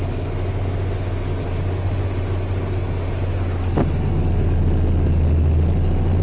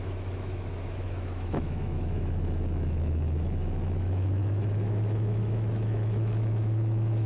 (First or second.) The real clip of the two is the first